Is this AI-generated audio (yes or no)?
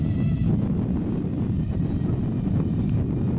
no